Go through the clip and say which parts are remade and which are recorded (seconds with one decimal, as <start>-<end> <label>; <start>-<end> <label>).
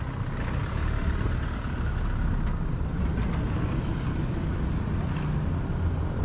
0.0-6.2 recorded